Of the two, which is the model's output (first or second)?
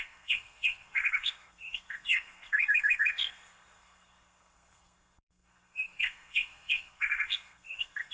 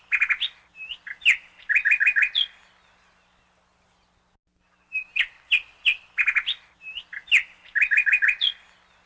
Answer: first